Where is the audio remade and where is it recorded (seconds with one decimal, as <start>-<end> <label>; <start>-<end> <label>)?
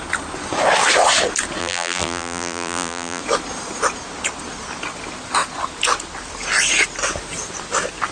0.0-1.6 recorded; 1.6-3.2 remade; 3.2-8.1 recorded